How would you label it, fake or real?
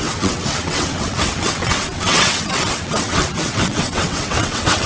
fake